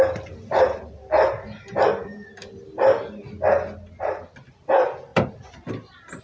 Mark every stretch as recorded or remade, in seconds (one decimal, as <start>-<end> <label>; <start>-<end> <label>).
0.0-6.2 recorded